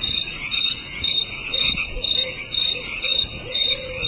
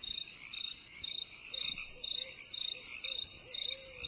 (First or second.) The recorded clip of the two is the second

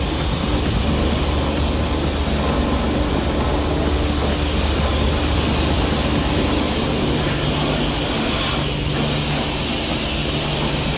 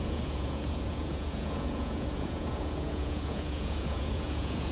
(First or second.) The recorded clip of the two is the first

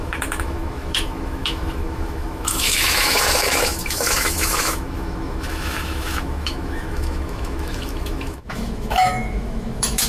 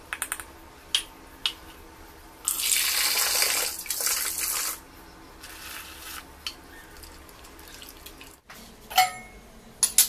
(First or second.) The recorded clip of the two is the second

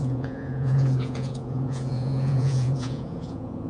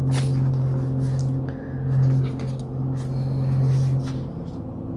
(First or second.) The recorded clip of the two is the second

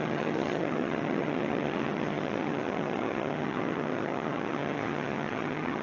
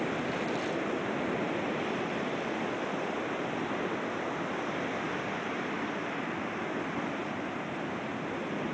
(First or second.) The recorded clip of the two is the second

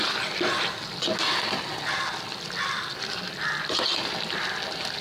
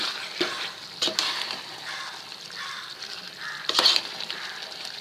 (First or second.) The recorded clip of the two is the first